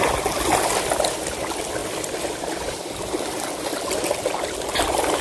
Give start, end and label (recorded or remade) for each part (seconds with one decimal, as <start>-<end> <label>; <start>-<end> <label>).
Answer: 0.0-1.8 recorded; 1.8-5.2 remade